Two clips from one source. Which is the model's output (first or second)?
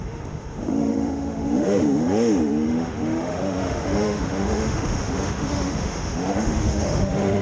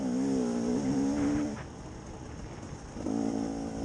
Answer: first